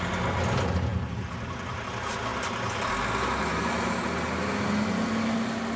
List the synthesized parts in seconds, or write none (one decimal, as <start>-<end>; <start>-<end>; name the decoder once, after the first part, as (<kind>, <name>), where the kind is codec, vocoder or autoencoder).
none